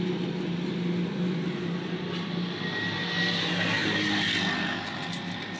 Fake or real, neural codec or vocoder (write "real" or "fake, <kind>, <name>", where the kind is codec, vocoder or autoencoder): real